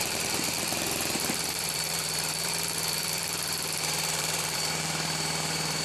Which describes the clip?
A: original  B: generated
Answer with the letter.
B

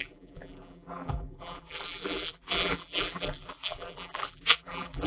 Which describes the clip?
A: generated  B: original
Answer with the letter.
A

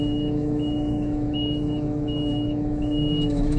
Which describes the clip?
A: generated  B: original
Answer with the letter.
A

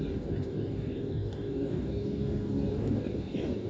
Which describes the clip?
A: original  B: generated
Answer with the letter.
B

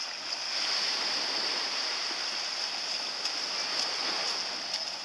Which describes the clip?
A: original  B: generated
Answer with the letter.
A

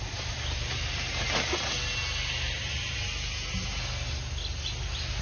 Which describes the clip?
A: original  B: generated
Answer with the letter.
A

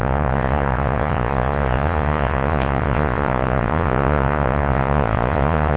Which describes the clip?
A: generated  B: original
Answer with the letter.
A